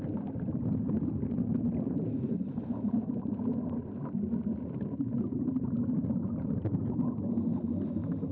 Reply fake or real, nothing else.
real